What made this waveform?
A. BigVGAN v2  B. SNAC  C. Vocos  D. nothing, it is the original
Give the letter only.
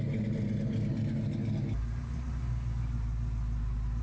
D